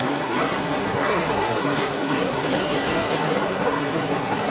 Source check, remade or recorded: remade